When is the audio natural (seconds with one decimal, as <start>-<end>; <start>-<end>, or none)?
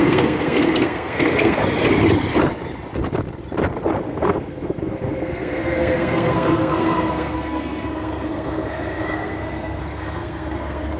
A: 1.6-4.0